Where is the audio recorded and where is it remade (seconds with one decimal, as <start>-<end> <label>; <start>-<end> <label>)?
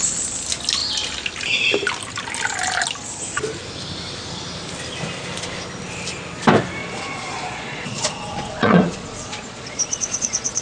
0.0-6.8 recorded; 6.8-10.6 remade